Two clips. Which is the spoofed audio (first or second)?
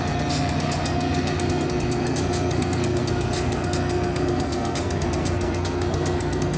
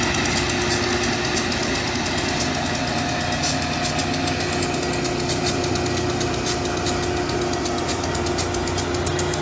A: first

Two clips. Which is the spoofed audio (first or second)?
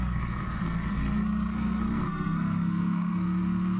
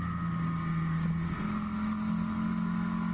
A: first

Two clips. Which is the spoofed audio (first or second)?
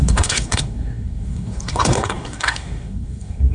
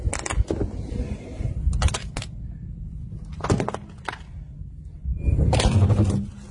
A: first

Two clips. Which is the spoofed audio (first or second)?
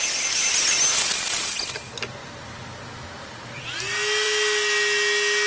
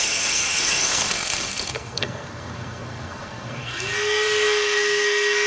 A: second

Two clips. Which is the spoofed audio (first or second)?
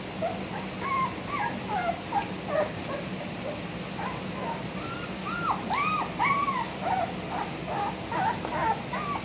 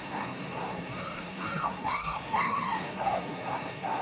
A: second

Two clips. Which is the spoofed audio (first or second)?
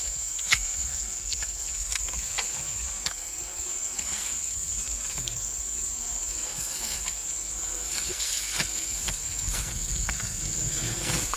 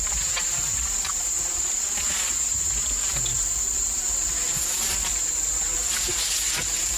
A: first